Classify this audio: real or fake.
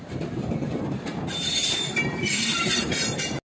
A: real